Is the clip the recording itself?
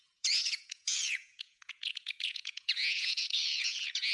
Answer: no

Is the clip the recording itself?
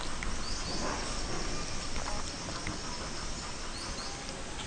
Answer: yes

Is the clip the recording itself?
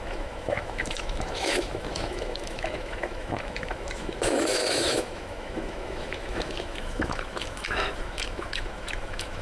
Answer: no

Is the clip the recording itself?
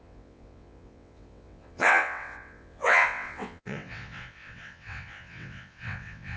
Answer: no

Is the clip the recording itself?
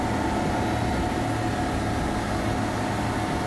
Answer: yes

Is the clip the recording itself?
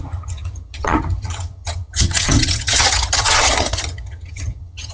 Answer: no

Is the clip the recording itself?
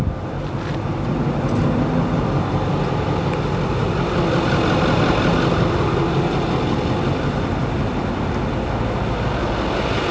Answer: yes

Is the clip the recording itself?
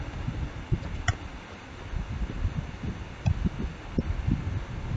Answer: yes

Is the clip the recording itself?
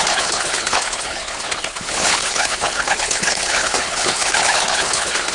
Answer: no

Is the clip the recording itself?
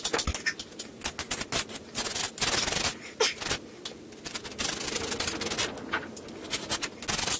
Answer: yes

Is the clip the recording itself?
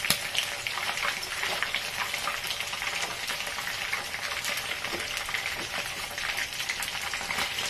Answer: no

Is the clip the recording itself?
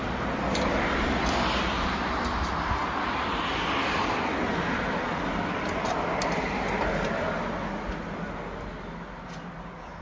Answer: yes